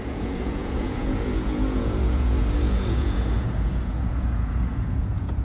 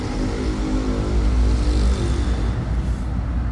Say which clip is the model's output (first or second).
first